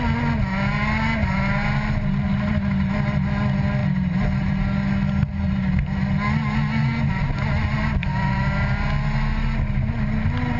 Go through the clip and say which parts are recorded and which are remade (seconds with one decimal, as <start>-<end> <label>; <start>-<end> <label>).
0.0-10.6 recorded